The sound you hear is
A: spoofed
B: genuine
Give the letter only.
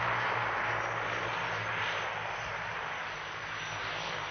B